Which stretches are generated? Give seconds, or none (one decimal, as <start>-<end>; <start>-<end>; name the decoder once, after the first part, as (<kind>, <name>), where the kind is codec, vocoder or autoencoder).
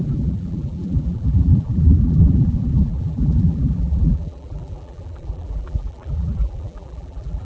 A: 0.0-7.4 (vocoder, BigVGAN v2)